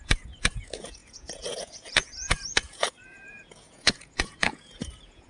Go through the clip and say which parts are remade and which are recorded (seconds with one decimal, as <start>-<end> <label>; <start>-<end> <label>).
0.0-5.3 remade